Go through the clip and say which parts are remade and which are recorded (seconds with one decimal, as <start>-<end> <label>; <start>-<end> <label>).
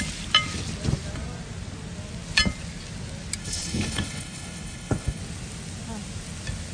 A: 0.0-3.4 recorded; 3.4-5.2 remade; 5.2-6.7 recorded